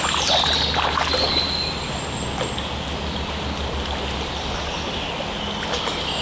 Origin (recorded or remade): recorded